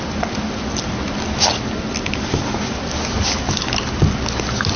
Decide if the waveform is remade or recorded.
recorded